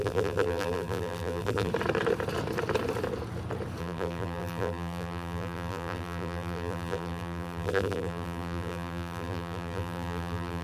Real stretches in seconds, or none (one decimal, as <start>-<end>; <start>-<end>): 1.7-3.8